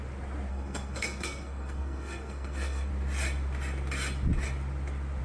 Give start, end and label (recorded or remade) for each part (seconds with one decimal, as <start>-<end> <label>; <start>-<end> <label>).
0.0-0.5 recorded; 0.5-2.9 remade; 2.9-5.2 recorded